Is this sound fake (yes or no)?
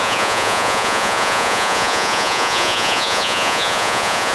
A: yes